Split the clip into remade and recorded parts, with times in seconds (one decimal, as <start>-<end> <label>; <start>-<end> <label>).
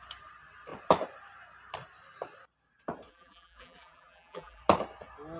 0.0-3.1 recorded; 3.1-4.6 remade; 4.6-5.4 recorded